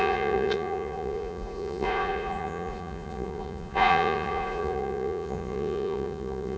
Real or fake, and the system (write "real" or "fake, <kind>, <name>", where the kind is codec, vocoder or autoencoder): fake, vocoder, Vocos